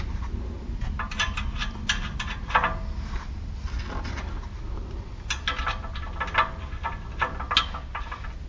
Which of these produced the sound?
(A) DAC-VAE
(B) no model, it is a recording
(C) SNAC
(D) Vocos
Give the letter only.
B